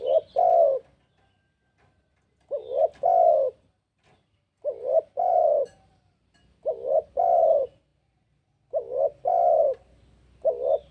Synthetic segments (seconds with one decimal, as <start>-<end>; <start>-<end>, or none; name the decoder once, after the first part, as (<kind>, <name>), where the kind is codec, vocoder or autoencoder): 3.2-6.2 (vocoder, BigVGAN v2)